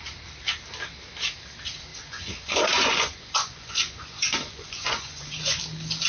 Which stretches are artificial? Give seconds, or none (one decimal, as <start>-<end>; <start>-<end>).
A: 1.9-5.6